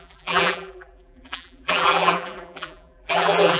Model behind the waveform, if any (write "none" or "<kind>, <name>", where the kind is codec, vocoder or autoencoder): vocoder, BigVGAN v2